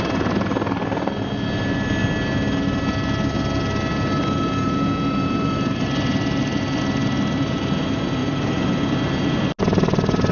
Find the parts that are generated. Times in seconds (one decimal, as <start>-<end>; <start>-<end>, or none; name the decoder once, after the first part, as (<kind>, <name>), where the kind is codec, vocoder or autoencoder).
none

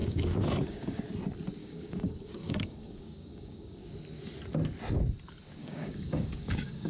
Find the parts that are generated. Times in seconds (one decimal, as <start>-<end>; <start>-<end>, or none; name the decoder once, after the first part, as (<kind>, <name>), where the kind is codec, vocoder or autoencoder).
0.0-1.0 (codec, DAC); 1.6-3.9; 5.6-6.9

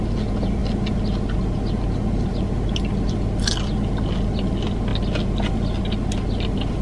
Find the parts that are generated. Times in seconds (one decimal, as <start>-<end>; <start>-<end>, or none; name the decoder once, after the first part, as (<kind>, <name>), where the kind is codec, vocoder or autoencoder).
none

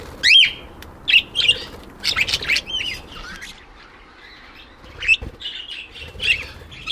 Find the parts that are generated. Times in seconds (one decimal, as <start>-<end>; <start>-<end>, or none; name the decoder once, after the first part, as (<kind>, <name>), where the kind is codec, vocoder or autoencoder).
none

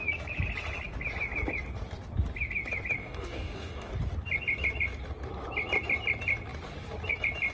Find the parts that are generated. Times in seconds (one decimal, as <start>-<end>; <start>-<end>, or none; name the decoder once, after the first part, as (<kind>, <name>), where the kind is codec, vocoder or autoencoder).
3.0-3.9 (codec, DAC)